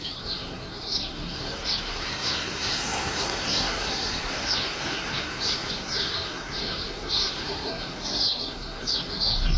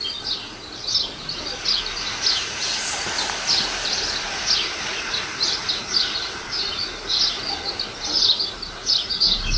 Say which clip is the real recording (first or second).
second